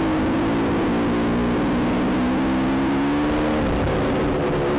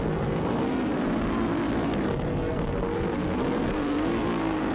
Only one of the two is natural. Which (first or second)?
first